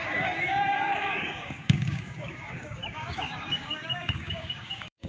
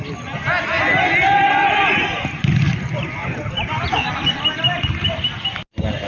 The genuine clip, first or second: second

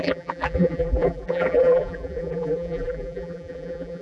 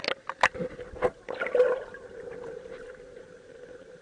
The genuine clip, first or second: second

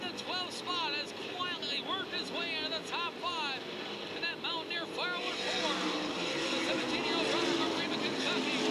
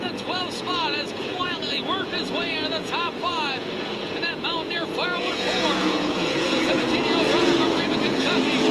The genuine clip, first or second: first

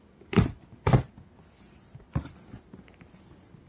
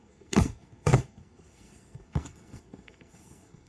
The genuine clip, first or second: first